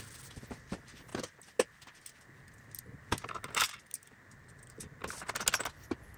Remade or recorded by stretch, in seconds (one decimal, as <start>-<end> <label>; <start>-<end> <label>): 0.0-6.2 recorded